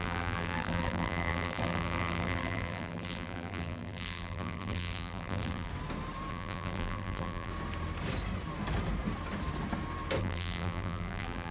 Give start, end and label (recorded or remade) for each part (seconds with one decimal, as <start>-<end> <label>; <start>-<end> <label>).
0.0-5.7 remade; 5.7-6.3 recorded; 6.3-7.5 remade; 7.5-10.2 recorded; 10.2-11.5 remade